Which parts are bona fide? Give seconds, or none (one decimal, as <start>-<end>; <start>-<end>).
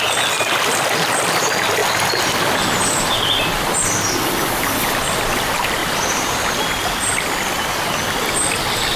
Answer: 0.0-5.8; 6.5-9.0